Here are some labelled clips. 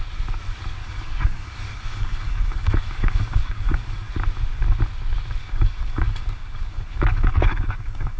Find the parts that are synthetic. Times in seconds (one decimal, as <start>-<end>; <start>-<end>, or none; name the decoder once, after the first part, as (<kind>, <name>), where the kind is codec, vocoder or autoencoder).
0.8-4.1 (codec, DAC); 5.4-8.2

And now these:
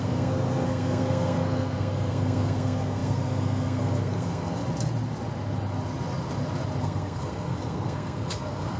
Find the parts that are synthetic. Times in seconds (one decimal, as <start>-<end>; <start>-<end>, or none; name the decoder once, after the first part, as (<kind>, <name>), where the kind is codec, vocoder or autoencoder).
0.0-4.6 (codec, SNAC); 6.8-8.8

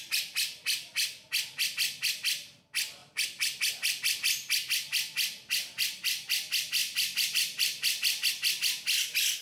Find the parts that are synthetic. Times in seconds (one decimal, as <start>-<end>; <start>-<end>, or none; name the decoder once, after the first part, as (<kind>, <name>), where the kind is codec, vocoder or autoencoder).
3.0-3.6 (vocoder, BigVGAN v2); 6.8-8.3